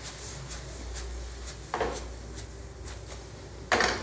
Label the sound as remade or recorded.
recorded